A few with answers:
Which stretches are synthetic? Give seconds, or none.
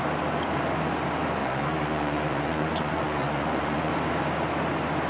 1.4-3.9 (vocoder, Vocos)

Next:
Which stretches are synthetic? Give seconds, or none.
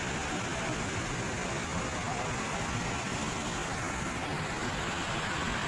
none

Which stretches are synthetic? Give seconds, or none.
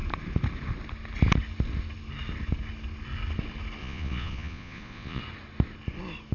3.8-5.2 (vocoder, Vocos)